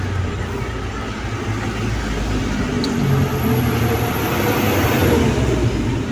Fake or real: real